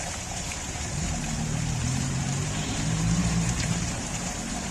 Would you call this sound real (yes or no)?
no